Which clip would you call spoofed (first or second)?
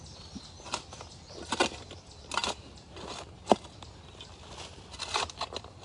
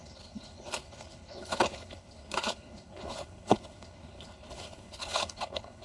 second